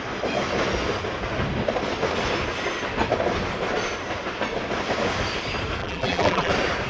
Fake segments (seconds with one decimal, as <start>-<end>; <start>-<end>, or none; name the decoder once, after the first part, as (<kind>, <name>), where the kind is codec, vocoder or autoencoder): 5.8-6.5 (vocoder, BigVGAN v2)